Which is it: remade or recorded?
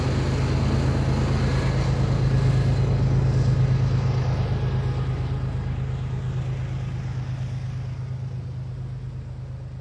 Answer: recorded